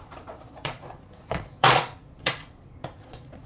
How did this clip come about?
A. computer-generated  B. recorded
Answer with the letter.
A